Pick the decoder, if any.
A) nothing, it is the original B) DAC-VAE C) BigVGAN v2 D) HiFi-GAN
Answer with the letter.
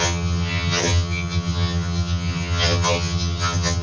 D